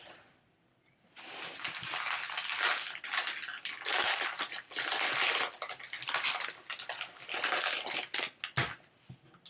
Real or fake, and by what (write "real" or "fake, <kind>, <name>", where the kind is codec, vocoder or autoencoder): real